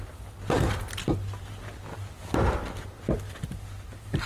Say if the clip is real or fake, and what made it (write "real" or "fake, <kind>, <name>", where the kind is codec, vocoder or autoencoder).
real